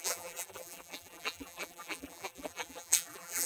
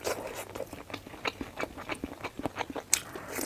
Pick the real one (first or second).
second